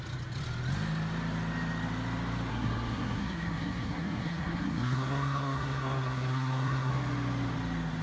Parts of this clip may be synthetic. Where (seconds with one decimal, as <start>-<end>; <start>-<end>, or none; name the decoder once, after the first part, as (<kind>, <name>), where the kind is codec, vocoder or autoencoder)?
2.5-6.9 (codec, SNAC)